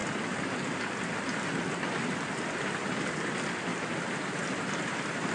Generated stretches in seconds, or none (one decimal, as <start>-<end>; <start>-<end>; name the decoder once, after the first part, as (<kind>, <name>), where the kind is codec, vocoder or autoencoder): none